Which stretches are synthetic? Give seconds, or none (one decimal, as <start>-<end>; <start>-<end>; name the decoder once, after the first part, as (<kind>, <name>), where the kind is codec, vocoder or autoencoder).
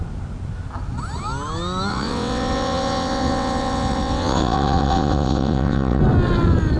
1.9-6.0 (vocoder, WaveNeXt)